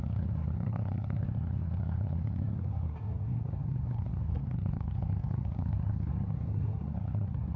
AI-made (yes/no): yes